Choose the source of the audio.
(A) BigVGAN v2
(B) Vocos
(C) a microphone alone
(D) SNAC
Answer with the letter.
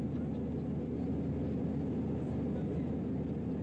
C